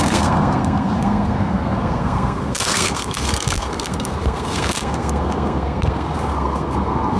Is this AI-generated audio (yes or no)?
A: yes